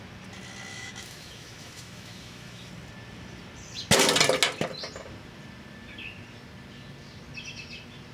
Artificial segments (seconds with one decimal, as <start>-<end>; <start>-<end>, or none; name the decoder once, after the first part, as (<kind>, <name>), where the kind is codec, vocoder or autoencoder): 0.7-2.7 (autoencoder, DAC-VAE)

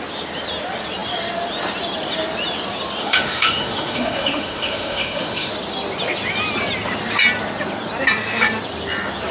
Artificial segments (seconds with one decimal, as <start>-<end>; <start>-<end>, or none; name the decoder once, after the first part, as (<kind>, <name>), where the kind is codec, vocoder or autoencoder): 3.0-5.5 (autoencoder, DAC-VAE)